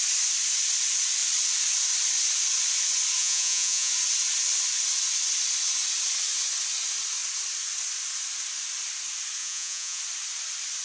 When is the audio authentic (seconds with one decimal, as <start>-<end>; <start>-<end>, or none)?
0.0-3.2; 3.9-9.4; 10.0-10.8